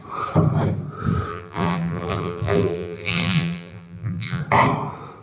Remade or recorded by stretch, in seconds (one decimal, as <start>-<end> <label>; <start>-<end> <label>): 0.0-1.3 recorded; 1.3-4.4 remade; 4.4-5.2 recorded